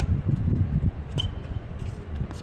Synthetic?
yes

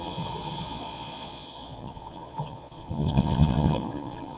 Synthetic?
yes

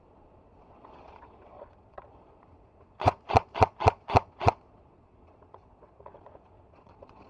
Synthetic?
yes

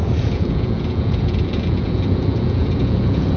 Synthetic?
yes